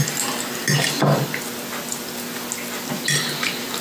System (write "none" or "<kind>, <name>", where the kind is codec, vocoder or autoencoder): none